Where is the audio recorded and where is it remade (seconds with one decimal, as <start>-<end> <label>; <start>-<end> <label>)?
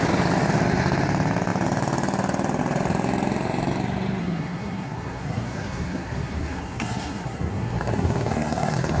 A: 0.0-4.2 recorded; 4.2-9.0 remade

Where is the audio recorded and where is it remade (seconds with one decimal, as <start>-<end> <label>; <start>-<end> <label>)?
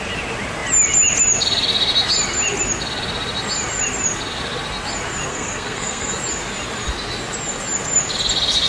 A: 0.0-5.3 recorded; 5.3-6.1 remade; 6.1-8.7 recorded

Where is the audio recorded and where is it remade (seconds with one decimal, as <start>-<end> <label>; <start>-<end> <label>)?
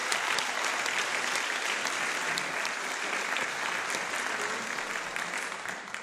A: 0.0-6.0 recorded